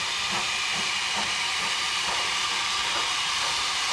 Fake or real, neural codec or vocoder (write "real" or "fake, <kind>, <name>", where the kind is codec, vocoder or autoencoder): fake, vocoder, BigVGAN v2